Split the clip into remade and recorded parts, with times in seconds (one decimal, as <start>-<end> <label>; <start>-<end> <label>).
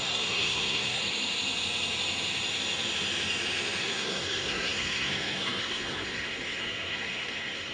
0.0-1.0 remade; 1.0-3.8 recorded; 3.8-7.7 remade